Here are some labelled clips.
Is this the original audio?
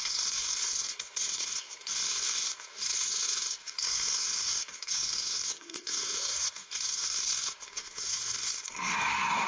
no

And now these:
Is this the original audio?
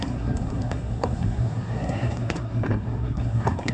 no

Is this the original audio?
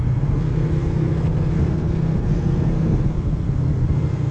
no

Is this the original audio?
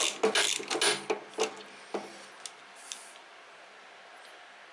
yes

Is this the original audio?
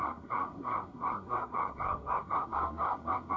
no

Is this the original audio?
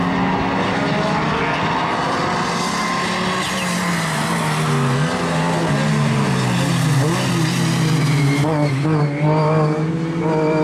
yes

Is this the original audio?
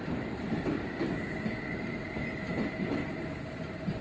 yes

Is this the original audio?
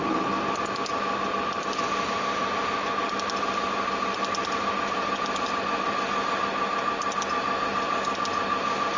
yes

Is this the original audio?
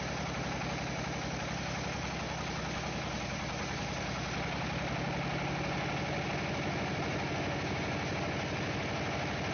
yes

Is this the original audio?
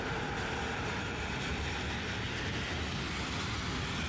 yes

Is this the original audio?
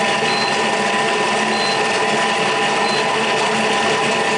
yes